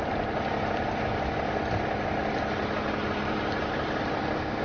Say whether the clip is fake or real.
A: real